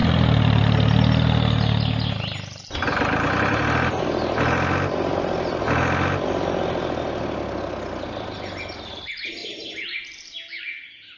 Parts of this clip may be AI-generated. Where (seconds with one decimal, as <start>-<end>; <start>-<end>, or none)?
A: 0.0-0.6